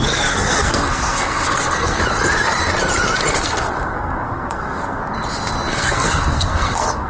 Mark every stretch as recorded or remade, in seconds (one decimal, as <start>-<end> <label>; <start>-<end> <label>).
0.0-2.0 remade; 2.0-3.3 recorded; 3.3-5.0 remade; 5.0-5.7 recorded; 5.7-7.1 remade